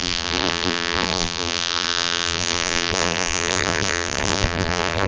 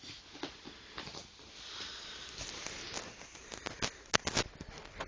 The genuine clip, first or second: second